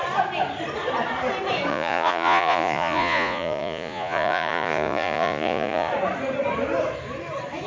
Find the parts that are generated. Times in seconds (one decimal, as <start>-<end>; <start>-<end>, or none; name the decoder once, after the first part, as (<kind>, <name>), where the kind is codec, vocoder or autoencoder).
1.7-5.9 (vocoder, Vocos)